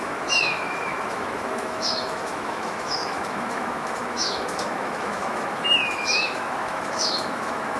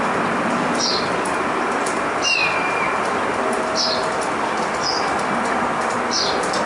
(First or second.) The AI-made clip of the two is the first